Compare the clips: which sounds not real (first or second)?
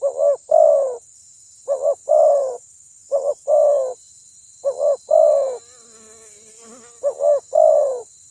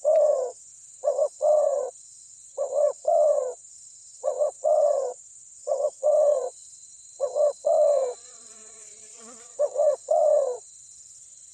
second